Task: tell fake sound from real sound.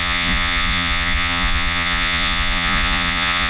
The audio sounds fake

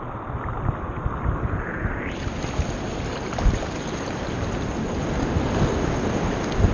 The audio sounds real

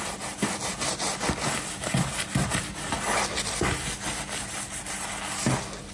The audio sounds real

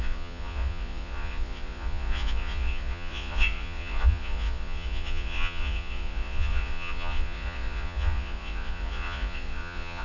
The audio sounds fake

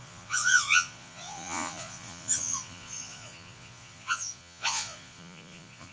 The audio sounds fake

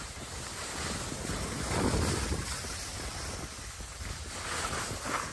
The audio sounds real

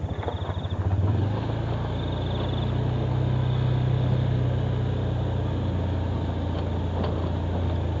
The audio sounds real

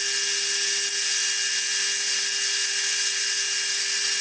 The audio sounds real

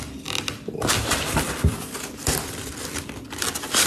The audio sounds real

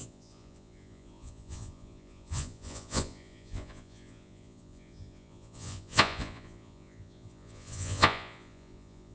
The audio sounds fake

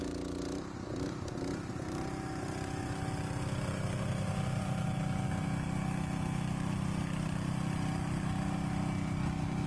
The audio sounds real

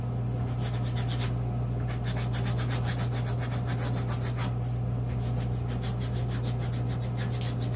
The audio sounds real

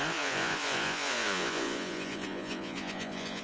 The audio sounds fake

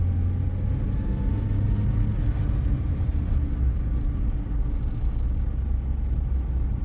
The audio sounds real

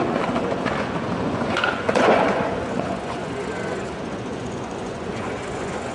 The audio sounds fake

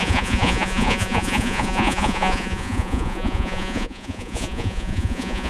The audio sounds fake